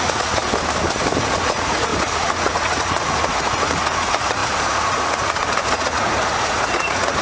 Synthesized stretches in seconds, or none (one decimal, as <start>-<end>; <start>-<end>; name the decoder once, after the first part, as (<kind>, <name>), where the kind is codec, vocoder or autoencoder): 0.0-0.4 (vocoder, Vocos); 1.2-7.2

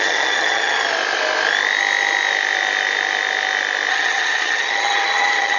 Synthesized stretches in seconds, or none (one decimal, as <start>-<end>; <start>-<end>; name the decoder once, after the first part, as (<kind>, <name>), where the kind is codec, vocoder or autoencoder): 0.0-0.8 (vocoder, HiFi-GAN); 3.9-5.6

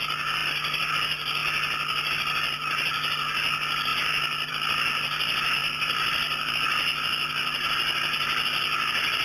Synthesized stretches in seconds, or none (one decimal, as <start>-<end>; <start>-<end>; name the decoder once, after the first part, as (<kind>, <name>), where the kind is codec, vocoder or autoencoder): 0.4-0.9 (vocoder, BigVGAN v2); 5.6-6.5

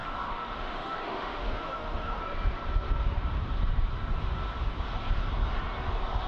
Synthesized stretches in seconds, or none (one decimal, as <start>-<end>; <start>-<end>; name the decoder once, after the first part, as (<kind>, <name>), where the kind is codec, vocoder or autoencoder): 0.0-2.2 (autoencoder, DAC-VAE)

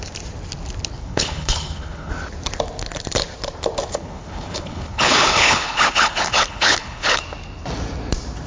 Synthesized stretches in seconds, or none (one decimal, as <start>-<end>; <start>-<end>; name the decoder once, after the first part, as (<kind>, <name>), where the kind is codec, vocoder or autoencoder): 1.0-2.1 (codec, HILCodec); 3.9-7.2

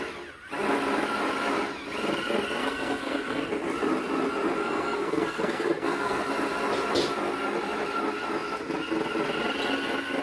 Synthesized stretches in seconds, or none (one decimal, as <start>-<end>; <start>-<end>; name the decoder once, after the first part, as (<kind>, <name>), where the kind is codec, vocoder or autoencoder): 2.6-3.5 (codec, SNAC); 4.6-6.3

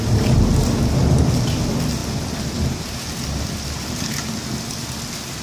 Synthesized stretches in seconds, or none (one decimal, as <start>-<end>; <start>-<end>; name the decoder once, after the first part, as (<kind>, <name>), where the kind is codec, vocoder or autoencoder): none

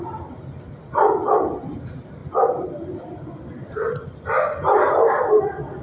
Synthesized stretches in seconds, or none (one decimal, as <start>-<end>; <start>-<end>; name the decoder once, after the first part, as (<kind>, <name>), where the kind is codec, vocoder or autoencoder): none